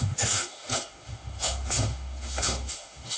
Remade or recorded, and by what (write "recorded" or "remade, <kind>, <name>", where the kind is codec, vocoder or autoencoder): remade, autoencoder, DAC-VAE